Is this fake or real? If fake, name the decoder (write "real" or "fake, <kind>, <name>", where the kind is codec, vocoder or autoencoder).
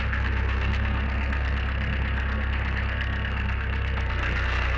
fake, codec, SNAC